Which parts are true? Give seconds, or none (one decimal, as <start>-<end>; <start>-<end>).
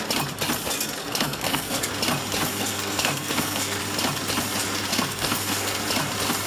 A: 0.0-1.0; 1.9-2.5; 3.8-4.9; 5.8-6.5